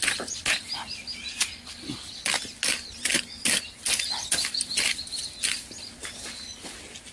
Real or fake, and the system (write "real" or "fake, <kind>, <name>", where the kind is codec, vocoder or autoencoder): real